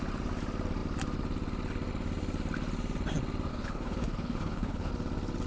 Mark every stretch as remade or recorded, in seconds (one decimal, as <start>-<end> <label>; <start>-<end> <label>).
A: 0.0-3.5 recorded; 3.5-4.9 remade; 4.9-5.5 recorded

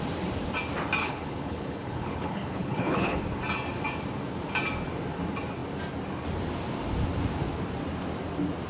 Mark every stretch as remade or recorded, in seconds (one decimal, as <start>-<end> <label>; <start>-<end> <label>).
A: 0.0-1.0 recorded; 1.0-3.2 remade; 3.2-8.7 recorded

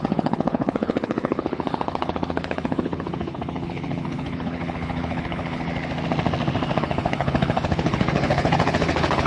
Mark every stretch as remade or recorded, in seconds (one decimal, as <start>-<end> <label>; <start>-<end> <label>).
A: 0.0-5.7 remade; 5.7-6.8 recorded; 6.8-9.3 remade